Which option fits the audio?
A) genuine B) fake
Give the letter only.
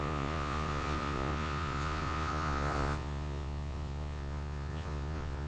B